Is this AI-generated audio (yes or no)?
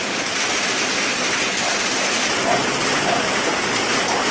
no